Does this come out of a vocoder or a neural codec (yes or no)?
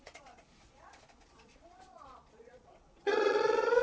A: yes